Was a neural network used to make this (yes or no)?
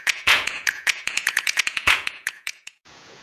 yes